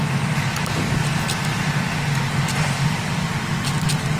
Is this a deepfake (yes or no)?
no